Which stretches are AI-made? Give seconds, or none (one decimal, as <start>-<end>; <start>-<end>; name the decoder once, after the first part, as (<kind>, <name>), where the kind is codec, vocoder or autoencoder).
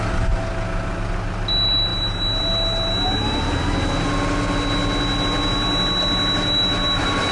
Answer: none